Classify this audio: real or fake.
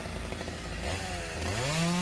real